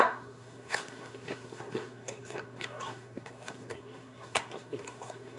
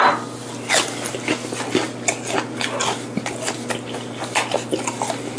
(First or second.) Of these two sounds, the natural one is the second